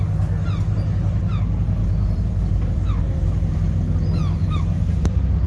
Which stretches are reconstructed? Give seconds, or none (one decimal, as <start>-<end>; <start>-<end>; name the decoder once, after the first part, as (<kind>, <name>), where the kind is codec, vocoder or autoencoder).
1.8-5.1 (vocoder, BigVGAN v2)